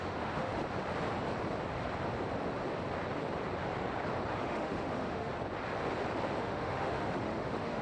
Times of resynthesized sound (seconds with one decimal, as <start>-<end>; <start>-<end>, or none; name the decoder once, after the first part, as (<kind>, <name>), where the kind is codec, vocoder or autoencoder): 0.0-0.5 (autoencoder, DAC-VAE); 4.4-5.3; 6.4-7.8